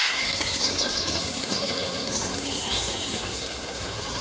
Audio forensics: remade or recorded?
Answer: remade